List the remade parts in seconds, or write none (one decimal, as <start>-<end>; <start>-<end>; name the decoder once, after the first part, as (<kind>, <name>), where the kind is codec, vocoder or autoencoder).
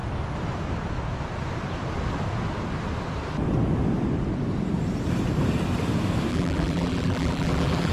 6.3-7.9 (vocoder, BigVGAN v2)